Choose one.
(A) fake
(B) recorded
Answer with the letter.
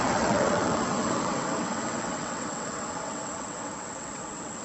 A